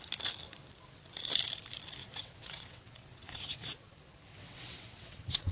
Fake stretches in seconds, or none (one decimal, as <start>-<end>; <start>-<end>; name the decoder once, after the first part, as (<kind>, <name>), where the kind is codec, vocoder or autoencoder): 2.0-3.7 (vocoder, WaveNeXt); 4.3-5.5